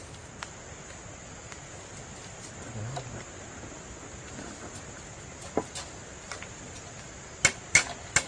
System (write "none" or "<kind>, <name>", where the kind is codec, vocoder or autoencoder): none